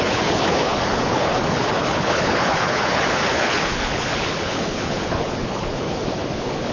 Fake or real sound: fake